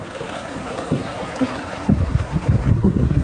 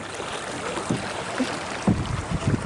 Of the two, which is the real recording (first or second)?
second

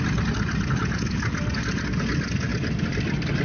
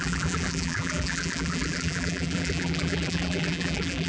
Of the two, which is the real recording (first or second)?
first